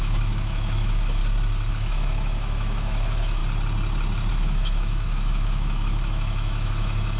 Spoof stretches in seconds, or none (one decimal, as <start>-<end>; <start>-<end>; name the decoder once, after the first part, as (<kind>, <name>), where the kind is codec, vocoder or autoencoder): 0.0-1.2 (autoencoder, DAC-VAE); 1.7-3.4; 4.3-7.2